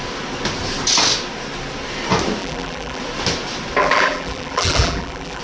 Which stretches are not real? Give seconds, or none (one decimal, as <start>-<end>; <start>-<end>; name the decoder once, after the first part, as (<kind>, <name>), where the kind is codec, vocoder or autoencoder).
2.4-3.0 (vocoder, BigVGAN v2); 3.8-5.4